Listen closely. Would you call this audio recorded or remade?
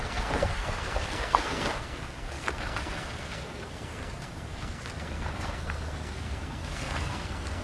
remade